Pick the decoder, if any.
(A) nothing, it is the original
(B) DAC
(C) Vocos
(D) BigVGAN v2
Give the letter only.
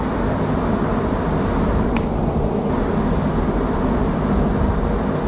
A